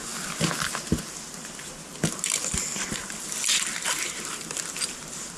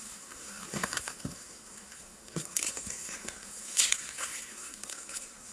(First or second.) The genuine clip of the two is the first